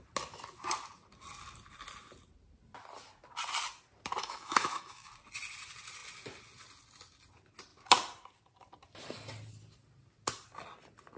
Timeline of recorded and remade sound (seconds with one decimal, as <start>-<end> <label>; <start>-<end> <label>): 0.0-4.2 recorded; 4.2-5.1 remade; 5.1-11.2 recorded

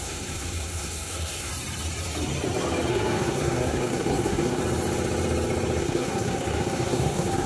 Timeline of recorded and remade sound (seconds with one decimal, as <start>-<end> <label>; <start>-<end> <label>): 0.0-1.5 remade; 1.5-2.9 recorded; 2.9-4.6 remade; 4.6-5.8 recorded; 5.8-7.5 remade

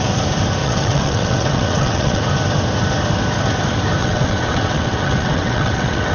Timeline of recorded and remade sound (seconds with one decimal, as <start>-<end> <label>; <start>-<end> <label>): 0.0-0.6 recorded; 0.6-2.2 remade; 2.2-4.0 recorded; 4.0-6.1 remade

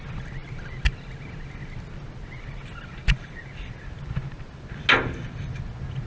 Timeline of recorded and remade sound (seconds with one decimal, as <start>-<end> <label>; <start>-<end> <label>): 0.0-6.1 recorded

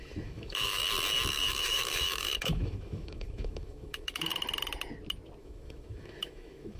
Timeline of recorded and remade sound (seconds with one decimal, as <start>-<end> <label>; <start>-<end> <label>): 0.0-0.8 remade; 0.8-1.3 recorded; 1.3-4.3 remade; 4.3-5.4 recorded; 5.4-6.8 remade

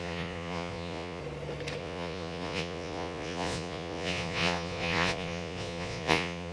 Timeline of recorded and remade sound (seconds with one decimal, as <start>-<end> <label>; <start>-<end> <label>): 0.0-1.2 remade; 1.2-1.8 recorded; 1.8-6.5 remade